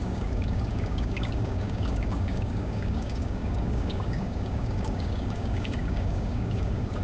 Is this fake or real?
fake